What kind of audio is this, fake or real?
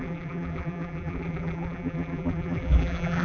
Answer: fake